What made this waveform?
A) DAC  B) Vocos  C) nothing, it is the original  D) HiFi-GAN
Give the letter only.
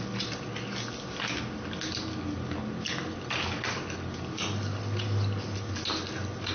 C